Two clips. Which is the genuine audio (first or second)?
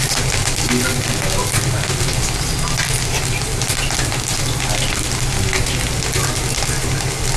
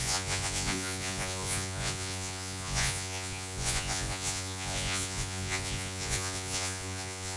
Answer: first